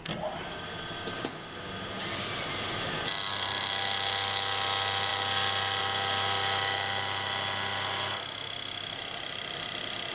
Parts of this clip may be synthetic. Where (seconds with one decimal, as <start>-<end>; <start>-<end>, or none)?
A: none

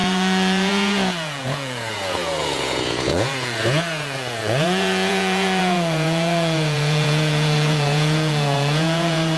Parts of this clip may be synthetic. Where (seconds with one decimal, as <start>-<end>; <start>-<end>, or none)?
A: 0.0-9.4

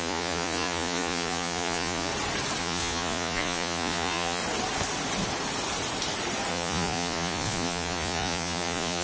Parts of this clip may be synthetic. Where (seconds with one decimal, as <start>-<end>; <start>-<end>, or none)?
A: 0.0-2.1; 2.6-4.4; 6.5-9.0

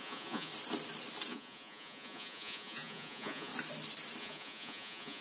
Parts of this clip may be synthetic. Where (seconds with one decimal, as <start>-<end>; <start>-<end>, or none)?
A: 0.0-0.5; 1.3-3.5; 4.2-5.2

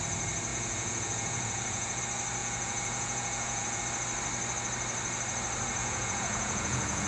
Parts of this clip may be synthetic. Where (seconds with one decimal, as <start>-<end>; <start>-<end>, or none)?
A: 0.5-2.0; 2.4-3.8; 5.8-7.1